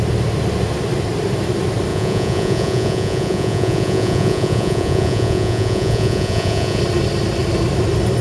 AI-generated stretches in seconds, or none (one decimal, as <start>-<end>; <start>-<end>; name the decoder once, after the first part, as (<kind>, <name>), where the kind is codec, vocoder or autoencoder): 1.9-6.8 (vocoder, Vocos)